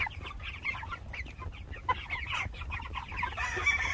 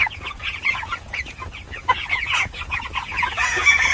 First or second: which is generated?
second